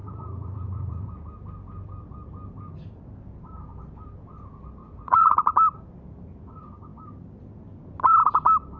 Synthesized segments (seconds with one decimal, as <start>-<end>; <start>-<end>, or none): 0.0-1.1; 4.8-5.5